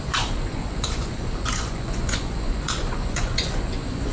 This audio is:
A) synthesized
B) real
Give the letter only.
A